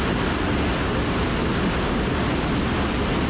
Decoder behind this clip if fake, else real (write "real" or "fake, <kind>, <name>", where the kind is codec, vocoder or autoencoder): real